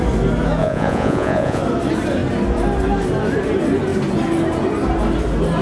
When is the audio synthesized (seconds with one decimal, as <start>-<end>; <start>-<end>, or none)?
0.6-1.6